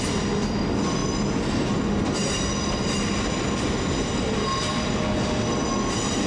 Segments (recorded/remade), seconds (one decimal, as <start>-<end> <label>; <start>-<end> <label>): 0.0-6.3 recorded